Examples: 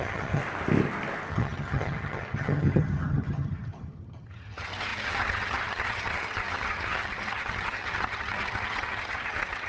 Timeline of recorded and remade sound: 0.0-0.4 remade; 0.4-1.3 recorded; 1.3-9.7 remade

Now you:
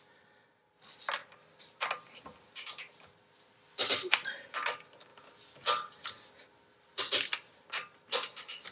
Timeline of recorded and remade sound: 0.0-8.7 recorded